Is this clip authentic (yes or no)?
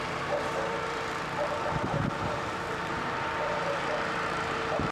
no